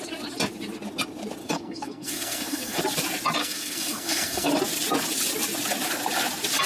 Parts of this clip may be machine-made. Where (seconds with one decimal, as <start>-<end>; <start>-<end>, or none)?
1.4-2.8; 3.4-4.5